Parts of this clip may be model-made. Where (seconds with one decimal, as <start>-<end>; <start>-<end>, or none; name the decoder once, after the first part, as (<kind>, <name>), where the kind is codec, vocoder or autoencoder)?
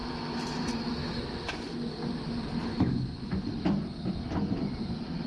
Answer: 0.0-1.5 (autoencoder, DAC-VAE); 2.7-3.3